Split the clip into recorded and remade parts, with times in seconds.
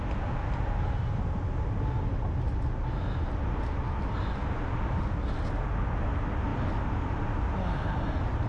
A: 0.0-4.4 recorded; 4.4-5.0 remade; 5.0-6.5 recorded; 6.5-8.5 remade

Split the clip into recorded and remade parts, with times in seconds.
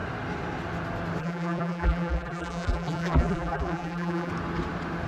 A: 0.0-1.2 recorded; 1.2-4.3 remade; 4.3-5.1 recorded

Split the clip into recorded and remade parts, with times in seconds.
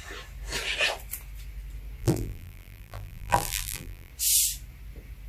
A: 0.0-2.0 recorded; 2.0-4.1 remade; 4.1-5.3 recorded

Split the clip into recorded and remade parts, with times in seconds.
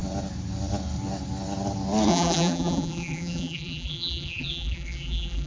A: 0.0-2.1 recorded; 2.1-5.5 remade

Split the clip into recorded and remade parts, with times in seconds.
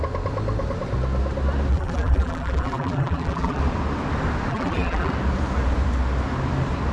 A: 0.0-1.7 recorded; 1.7-3.6 remade; 3.6-4.5 recorded; 4.5-5.1 remade; 5.1-6.9 recorded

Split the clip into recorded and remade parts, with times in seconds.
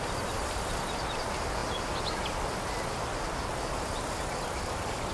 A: 0.0-5.1 recorded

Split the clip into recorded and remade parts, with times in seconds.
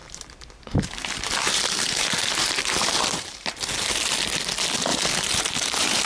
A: 0.0-3.7 remade; 3.7-4.9 recorded; 4.9-6.1 remade